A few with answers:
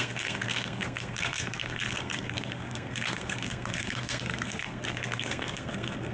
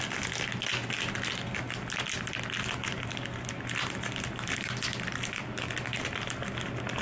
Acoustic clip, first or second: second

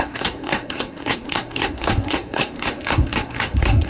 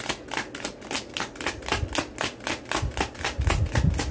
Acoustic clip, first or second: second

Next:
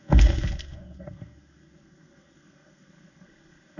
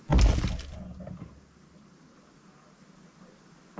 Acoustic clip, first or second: second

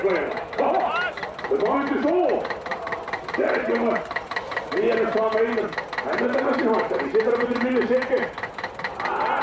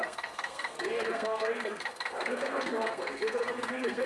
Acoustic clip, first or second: first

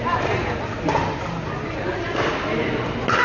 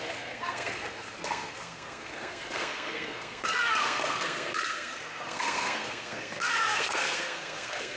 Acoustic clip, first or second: first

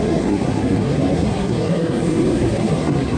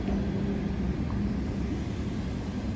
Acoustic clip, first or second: second